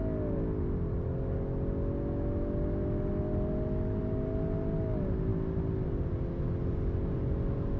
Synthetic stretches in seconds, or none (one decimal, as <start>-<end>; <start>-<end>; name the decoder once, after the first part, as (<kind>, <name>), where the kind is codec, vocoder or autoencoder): none